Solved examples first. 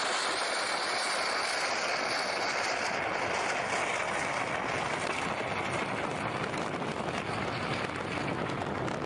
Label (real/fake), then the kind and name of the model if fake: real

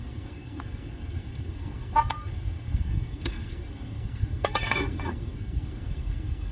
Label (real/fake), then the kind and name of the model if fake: fake, codec, SNAC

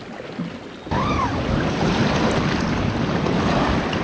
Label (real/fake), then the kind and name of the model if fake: real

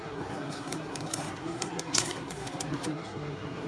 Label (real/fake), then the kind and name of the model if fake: fake, codec, SNAC